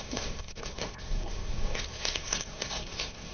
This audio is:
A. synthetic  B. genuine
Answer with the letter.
A